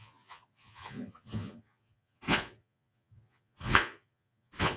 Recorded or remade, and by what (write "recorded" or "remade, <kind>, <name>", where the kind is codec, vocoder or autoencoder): remade, vocoder, Vocos